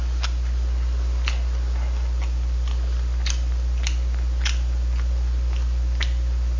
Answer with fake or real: real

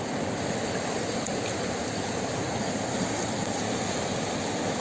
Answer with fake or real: real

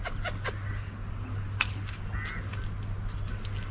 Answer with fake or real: real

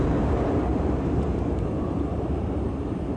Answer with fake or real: fake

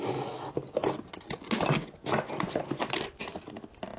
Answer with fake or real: real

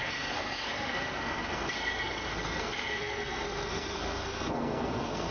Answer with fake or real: fake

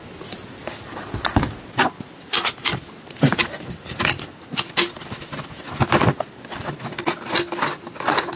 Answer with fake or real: real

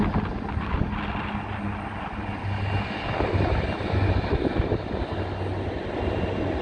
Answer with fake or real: real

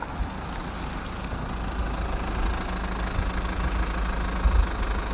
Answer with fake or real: real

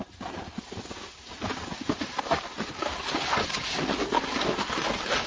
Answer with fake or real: real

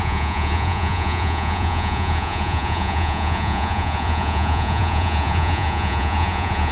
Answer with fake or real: fake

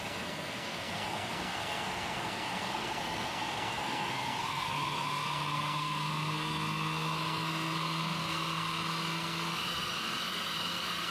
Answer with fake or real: fake